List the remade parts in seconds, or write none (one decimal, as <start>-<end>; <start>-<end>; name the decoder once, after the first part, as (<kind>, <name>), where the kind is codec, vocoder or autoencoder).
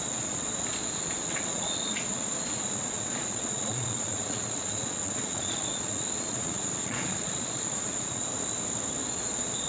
0.0-8.3 (vocoder, Vocos); 9.0-9.7